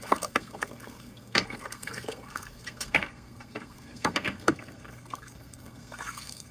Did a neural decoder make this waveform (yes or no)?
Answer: yes